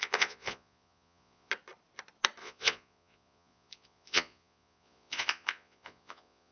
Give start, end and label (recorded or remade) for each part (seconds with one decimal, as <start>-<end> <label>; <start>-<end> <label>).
0.0-1.5 remade; 1.5-2.4 recorded; 2.4-6.5 remade